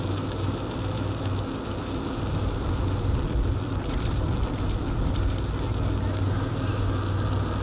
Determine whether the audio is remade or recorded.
recorded